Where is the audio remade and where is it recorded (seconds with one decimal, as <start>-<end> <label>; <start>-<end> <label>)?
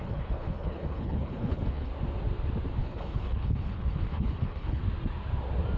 0.0-1.9 remade; 1.9-2.8 recorded; 2.8-4.8 remade; 4.8-5.8 recorded